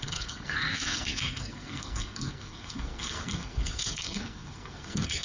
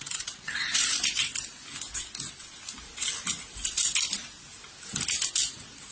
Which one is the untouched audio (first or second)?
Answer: second